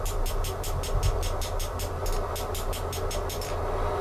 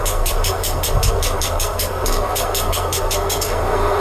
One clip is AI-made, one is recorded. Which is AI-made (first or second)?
second